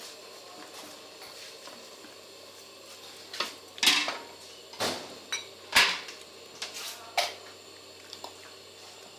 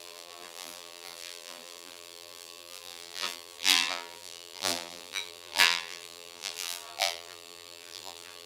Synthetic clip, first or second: second